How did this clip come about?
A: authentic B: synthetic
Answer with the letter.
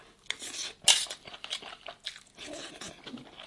A